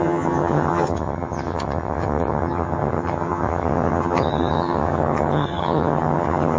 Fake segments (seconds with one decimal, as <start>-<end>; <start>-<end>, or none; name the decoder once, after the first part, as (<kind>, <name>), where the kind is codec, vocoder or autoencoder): 0.0-6.6 (vocoder, HiFi-GAN)